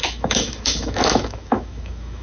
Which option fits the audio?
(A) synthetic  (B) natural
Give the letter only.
A